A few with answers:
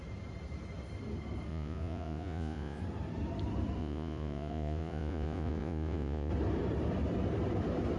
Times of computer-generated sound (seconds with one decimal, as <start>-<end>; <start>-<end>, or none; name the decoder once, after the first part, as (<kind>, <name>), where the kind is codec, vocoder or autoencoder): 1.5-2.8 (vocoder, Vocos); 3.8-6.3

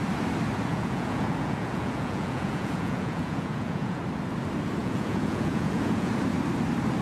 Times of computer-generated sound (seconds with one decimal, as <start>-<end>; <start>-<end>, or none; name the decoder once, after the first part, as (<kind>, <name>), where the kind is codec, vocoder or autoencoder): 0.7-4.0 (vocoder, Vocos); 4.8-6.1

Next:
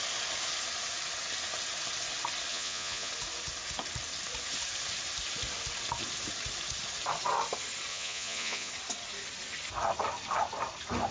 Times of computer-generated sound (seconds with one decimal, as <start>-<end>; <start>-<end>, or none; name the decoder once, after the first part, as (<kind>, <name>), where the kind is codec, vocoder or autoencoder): 2.5-3.1 (vocoder, Vocos); 7.9-8.7